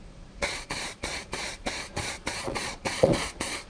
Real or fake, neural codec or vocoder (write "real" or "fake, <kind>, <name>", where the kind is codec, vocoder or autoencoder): fake, vocoder, Vocos